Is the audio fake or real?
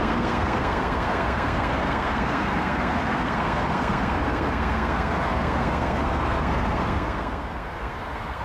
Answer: fake